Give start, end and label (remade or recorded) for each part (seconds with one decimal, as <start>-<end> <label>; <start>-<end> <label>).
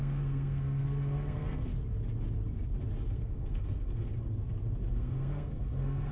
0.0-1.7 remade; 1.7-3.1 recorded; 3.1-4.1 remade; 4.1-4.9 recorded; 4.9-6.1 remade